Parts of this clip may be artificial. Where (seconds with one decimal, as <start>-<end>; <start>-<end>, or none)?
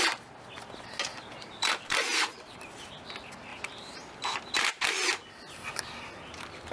1.1-2.7; 3.5-4.8